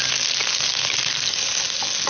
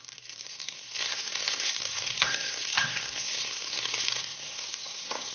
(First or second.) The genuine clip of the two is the first